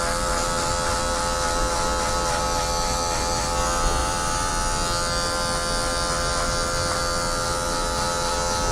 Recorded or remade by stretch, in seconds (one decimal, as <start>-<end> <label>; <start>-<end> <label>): 0.0-4.0 recorded; 4.0-4.5 remade; 4.5-8.7 recorded

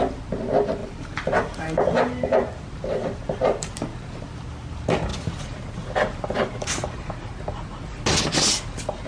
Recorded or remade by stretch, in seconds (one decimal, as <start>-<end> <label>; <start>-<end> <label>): 0.0-0.8 recorded; 0.8-3.7 remade; 3.7-5.1 recorded; 5.1-7.1 remade; 7.1-9.1 recorded

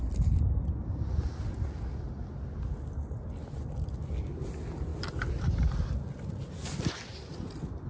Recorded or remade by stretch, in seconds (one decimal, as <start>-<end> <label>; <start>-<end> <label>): 0.0-7.9 recorded

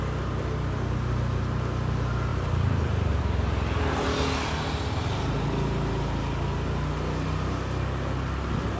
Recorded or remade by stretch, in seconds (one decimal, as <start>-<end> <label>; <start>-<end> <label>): 0.0-2.3 recorded; 2.3-3.2 remade; 3.2-8.8 recorded

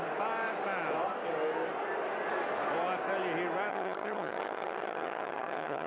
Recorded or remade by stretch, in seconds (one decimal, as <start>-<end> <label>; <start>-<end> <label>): 0.0-3.7 recorded; 3.7-5.9 remade